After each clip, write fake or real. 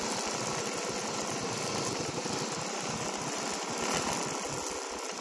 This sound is real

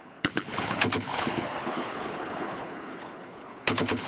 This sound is fake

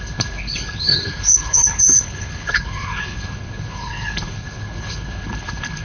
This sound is fake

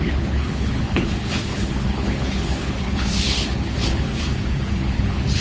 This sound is fake